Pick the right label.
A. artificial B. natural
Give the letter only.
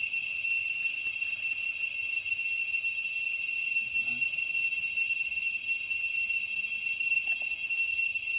B